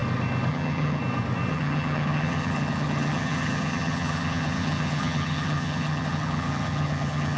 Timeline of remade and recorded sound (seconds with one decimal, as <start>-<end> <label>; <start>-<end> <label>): 0.0-0.5 recorded; 0.5-1.0 remade; 1.0-1.5 recorded; 1.5-7.4 remade